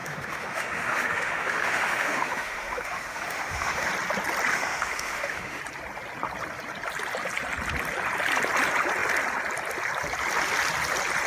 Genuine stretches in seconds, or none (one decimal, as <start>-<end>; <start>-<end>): 3.9-4.5; 5.6-11.3